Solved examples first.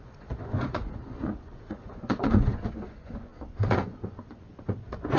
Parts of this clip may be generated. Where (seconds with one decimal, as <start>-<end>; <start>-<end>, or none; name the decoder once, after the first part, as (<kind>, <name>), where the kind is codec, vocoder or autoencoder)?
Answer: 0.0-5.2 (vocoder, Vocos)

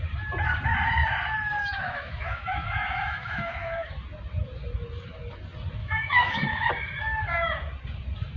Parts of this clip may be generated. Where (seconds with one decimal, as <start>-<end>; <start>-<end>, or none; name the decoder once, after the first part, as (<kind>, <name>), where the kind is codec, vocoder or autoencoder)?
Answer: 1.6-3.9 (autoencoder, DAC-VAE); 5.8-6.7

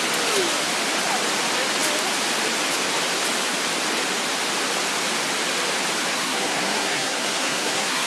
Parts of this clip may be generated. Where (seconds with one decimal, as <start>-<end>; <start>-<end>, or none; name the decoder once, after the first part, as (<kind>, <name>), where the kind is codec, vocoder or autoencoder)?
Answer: 6.1-8.1 (codec, SNAC)

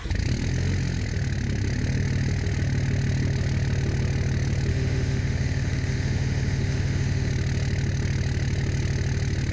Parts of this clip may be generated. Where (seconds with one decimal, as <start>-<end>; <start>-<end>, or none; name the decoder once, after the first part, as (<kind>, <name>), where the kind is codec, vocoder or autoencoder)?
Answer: 4.7-7.3 (autoencoder, DAC-VAE)

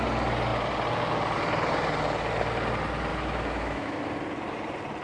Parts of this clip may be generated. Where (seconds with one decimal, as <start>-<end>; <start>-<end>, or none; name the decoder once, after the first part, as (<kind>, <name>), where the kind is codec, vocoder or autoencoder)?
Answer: 3.1-4.0 (autoencoder, DAC-VAE)

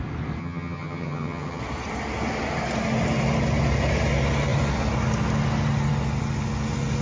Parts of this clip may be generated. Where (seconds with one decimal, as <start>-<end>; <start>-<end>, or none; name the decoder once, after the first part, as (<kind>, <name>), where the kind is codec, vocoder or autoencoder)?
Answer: 0.4-1.6 (vocoder, HiFi-GAN)